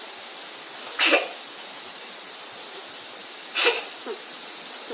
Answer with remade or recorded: recorded